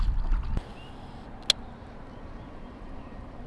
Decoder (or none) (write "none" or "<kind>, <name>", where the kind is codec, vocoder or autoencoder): none